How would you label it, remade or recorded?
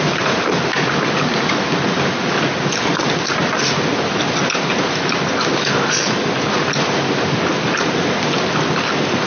recorded